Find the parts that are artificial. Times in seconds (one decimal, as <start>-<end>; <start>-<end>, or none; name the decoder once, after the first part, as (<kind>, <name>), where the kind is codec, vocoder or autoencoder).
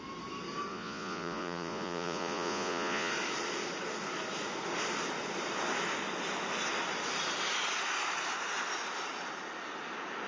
0.7-3.1 (vocoder, Vocos)